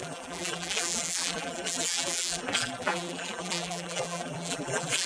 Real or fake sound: fake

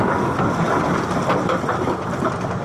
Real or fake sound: fake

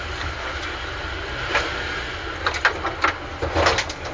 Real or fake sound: real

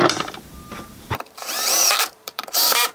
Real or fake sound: fake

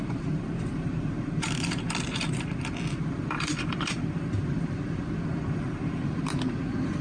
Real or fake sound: fake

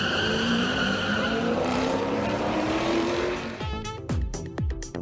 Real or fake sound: fake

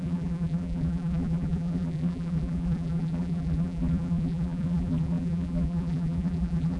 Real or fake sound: fake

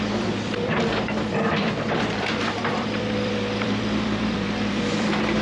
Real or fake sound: fake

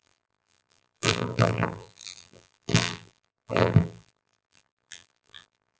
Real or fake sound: fake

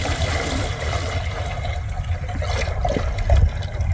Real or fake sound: real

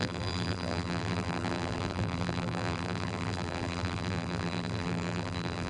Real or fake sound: fake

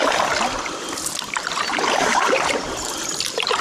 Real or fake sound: fake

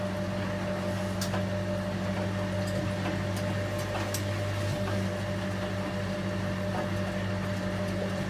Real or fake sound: real